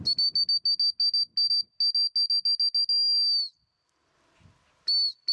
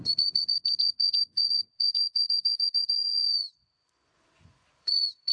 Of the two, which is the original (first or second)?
first